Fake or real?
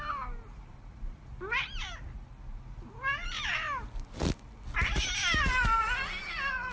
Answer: real